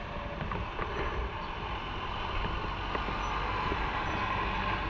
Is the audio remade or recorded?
recorded